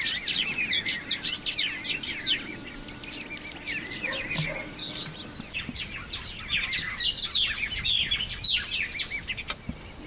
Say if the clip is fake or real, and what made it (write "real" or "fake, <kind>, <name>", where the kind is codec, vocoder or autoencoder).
real